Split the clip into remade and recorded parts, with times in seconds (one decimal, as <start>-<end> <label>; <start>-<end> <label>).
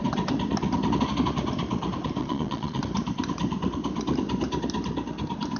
0.0-2.2 recorded; 2.2-2.8 remade; 2.8-5.6 recorded